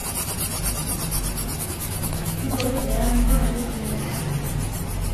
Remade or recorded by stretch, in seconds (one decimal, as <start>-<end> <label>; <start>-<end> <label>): 0.0-1.6 recorded; 1.6-4.2 remade; 4.2-5.1 recorded